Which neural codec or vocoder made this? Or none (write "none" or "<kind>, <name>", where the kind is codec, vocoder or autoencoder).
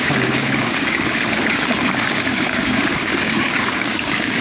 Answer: codec, DAC